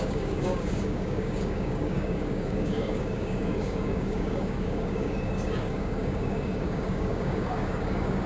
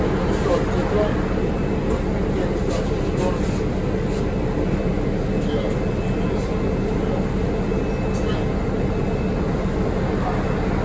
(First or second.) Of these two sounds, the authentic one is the second